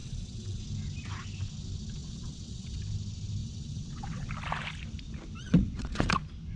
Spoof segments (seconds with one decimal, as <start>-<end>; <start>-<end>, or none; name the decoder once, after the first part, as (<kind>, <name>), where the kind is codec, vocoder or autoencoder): 0.0-0.6 (vocoder, WaveNeXt); 2.0-2.8; 3.4-4.3; 5.4-6.1